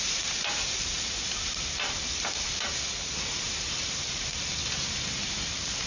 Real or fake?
fake